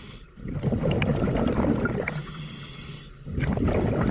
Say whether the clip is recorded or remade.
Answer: recorded